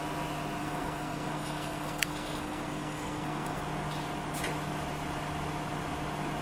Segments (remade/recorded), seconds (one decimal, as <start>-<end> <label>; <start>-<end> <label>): 0.0-0.6 recorded; 0.6-3.6 remade; 3.6-6.4 recorded